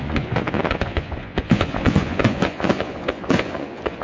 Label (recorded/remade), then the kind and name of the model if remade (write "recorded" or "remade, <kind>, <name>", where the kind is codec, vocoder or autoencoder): remade, vocoder, Vocos